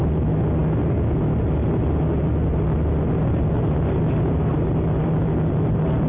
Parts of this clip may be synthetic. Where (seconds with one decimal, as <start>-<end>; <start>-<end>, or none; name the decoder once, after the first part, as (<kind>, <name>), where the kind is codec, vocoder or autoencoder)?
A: none